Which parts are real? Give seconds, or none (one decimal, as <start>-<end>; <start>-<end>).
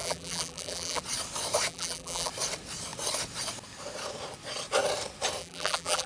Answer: 1.0-1.7; 2.3-5.4